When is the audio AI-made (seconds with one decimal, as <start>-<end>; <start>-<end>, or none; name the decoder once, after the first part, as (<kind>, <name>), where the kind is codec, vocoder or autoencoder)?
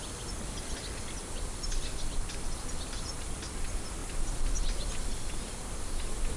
none